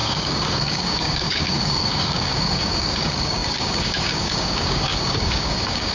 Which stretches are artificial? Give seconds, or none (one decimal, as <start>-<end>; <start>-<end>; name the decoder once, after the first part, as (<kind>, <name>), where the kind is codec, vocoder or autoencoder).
0.0-5.9 (codec, DAC)